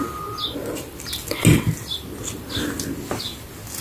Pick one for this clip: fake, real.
real